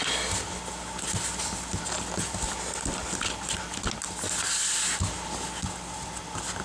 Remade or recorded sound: recorded